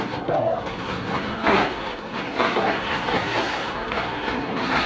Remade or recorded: remade